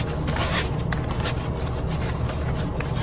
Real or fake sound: real